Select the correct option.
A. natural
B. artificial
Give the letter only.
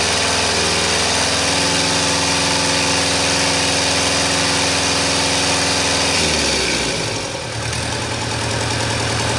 A